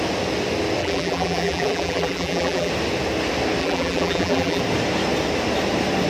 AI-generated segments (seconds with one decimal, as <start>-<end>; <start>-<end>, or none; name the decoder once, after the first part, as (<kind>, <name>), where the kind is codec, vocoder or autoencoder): 0.8-2.7 (vocoder, BigVGAN v2); 3.6-4.6